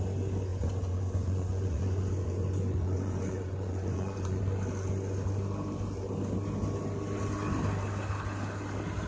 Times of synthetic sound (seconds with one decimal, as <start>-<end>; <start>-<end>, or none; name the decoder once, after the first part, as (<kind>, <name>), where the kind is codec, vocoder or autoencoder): 0.5-4.4 (vocoder, Vocos)